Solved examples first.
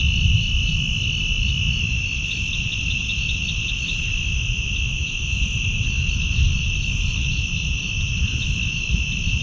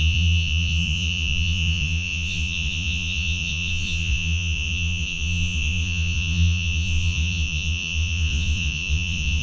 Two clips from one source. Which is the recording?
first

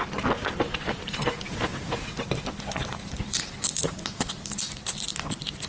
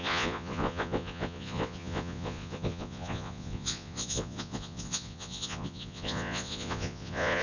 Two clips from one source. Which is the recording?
first